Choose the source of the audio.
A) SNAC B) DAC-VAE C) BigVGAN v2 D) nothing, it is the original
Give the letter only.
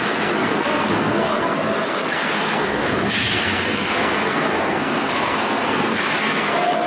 A